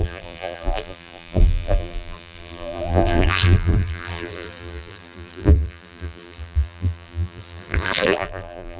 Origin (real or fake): fake